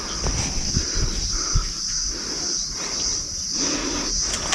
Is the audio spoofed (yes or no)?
no